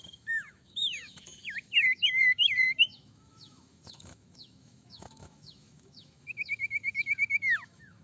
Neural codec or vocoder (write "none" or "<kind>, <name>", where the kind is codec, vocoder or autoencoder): autoencoder, DAC-VAE